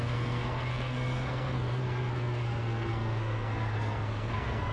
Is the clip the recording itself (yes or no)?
no